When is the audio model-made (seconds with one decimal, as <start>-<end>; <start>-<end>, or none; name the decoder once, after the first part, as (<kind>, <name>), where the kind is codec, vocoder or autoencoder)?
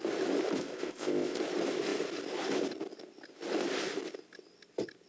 0.6-1.4 (codec, ZipCodec)